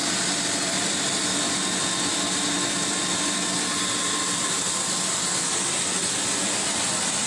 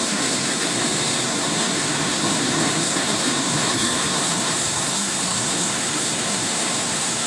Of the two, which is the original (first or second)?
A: first